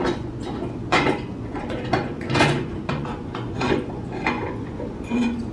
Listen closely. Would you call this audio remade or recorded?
remade